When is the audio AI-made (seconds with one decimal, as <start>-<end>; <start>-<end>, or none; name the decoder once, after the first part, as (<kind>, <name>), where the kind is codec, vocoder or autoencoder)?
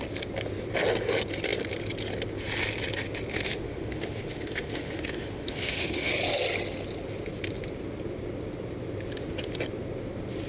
3.3-6.1 (autoencoder, DAC-VAE)